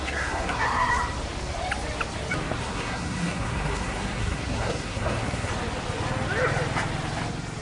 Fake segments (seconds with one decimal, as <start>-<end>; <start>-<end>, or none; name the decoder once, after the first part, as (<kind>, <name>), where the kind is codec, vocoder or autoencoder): 0.0-0.9 (codec, SNAC); 2.6-5.5